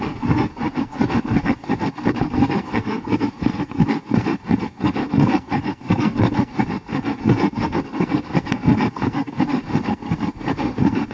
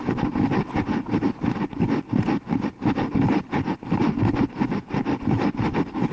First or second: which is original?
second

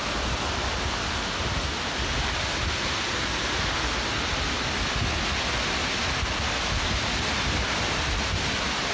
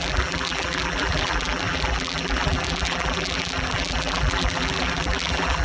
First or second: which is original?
first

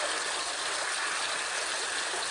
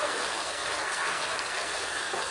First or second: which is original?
first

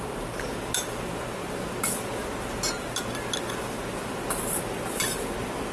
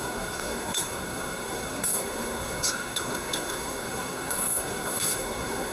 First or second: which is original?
first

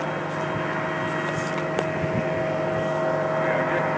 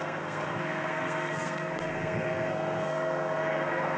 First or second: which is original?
first